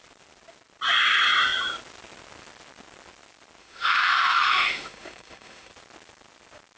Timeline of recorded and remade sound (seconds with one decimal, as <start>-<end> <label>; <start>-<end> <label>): 0.0-3.6 recorded; 3.6-5.7 remade; 5.7-6.8 recorded